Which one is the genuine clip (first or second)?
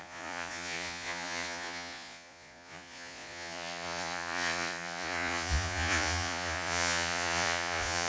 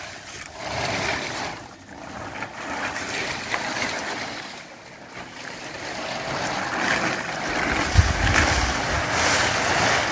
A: second